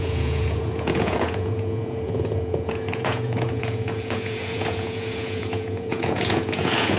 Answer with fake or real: fake